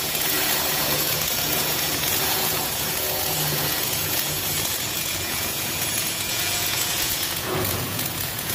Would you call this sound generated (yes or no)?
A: yes